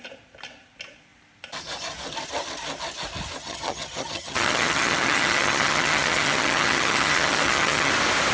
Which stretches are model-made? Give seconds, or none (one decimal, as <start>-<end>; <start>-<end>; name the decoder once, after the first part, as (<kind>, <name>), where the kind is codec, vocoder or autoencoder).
3.4-7.9 (vocoder, HiFi-GAN)